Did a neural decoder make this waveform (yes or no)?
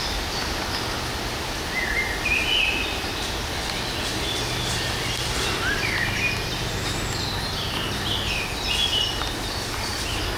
no